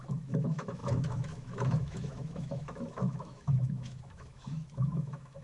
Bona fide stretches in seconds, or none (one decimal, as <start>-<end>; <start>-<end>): none

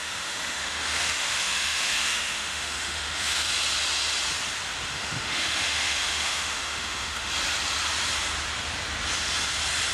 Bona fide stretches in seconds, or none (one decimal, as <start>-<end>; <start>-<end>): 3.5-4.9; 7.3-9.9

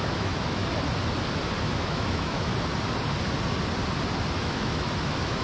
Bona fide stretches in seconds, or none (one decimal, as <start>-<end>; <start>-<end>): 0.6-1.6; 2.5-4.4

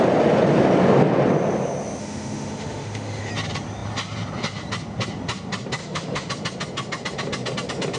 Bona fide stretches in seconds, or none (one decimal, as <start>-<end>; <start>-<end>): 0.0-2.0; 3.3-5.8; 6.3-8.0

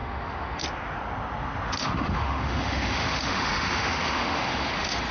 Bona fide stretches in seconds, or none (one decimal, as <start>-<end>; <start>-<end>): 0.6-1.8

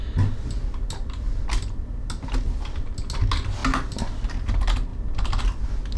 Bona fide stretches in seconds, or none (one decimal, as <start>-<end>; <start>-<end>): 0.0-6.0